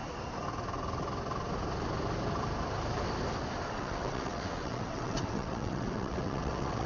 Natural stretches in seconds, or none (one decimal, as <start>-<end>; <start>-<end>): 0.0-3.7